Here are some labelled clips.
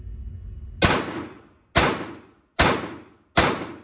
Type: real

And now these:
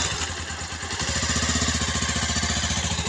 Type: real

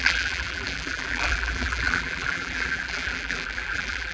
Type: fake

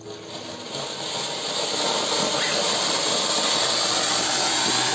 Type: real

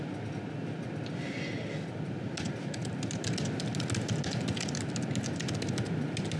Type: real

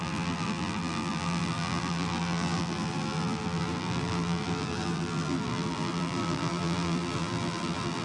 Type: fake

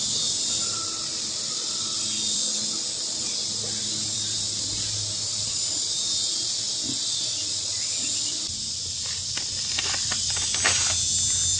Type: fake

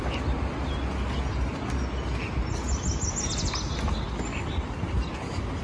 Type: real